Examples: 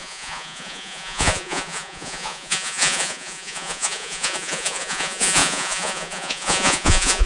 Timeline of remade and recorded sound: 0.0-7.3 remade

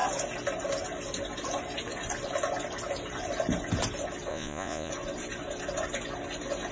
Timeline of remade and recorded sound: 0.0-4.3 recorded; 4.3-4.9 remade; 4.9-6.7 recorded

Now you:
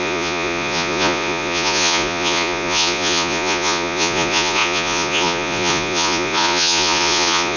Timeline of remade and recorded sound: 0.0-7.6 remade

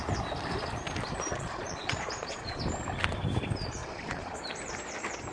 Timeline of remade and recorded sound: 0.0-1.3 recorded; 1.3-2.6 remade; 2.6-3.8 recorded; 3.8-4.4 remade; 4.4-5.3 recorded

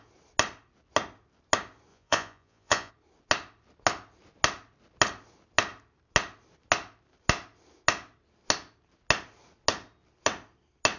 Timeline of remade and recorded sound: 0.0-1.9 recorded; 1.9-2.9 remade; 2.9-11.0 recorded

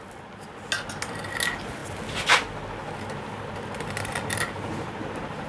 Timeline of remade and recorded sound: 0.0-5.5 recorded

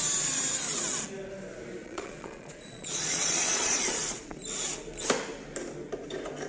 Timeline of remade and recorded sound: 0.0-1.8 recorded; 1.8-4.4 remade; 4.4-6.5 recorded

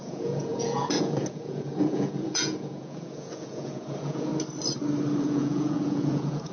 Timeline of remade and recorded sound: 0.0-4.3 remade; 4.3-5.2 recorded; 5.2-6.5 remade